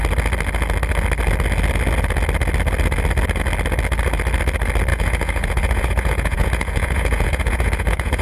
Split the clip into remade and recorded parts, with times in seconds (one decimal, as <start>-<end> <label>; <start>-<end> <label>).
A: 0.0-4.9 recorded; 4.9-8.2 remade